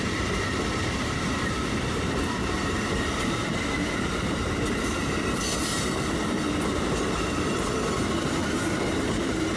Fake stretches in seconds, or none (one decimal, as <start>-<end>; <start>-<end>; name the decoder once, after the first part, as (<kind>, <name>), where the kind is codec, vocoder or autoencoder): none